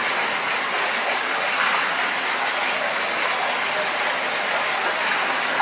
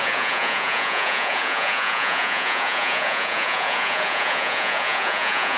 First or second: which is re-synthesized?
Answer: second